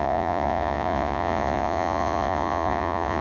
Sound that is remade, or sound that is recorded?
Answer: remade